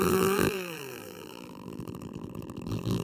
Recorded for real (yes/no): no